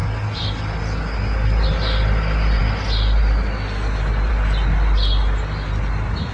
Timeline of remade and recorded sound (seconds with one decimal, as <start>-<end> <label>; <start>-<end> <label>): 0.0-6.3 recorded